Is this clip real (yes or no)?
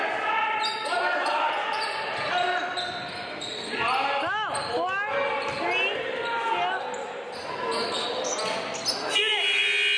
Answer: yes